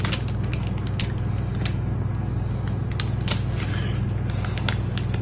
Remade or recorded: recorded